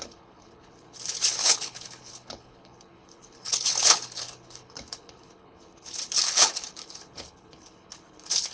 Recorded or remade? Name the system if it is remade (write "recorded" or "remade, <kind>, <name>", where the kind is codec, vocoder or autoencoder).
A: remade, codec, HILCodec